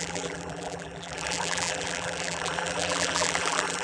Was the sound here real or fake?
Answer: fake